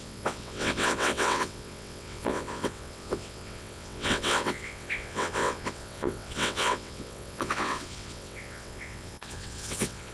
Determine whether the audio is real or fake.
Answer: fake